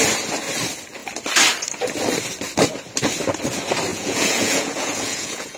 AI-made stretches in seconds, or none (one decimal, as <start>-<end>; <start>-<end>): 3.9-5.6

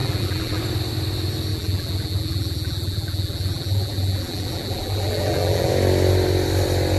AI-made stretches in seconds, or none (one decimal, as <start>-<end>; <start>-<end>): 0.0-0.6; 1.5-5.7